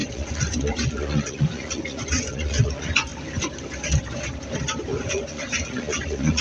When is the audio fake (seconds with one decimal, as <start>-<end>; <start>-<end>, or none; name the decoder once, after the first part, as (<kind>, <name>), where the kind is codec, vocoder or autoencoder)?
0.0-3.1 (vocoder, Vocos); 5.1-6.4